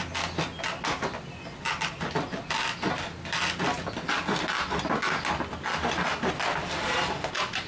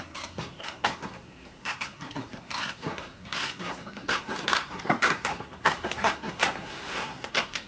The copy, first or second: second